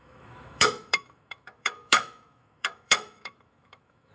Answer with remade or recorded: remade